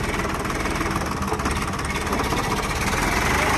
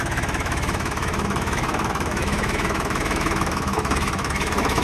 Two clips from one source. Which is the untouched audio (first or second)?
first